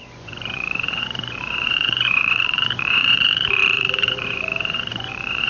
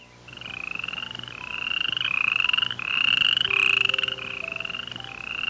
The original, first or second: second